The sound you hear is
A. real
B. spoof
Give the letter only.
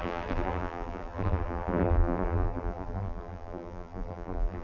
B